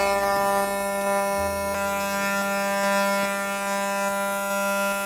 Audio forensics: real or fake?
real